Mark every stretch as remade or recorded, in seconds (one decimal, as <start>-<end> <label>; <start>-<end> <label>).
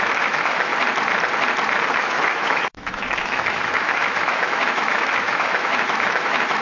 0.0-0.7 remade; 0.7-2.0 recorded; 2.0-6.6 remade